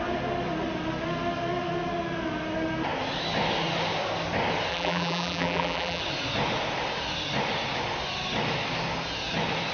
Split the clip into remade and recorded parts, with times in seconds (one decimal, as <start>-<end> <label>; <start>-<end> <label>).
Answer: 0.0-4.7 recorded; 4.7-6.0 remade; 6.0-9.7 recorded